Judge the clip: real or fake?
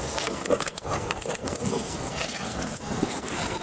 fake